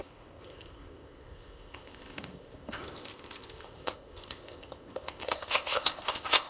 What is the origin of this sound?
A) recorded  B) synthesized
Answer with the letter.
B